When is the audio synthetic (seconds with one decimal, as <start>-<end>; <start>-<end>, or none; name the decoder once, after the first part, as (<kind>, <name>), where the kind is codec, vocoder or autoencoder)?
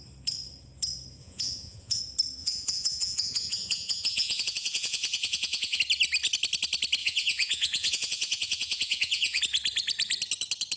1.2-2.0 (vocoder, Vocos); 2.4-5.8; 7.0-9.4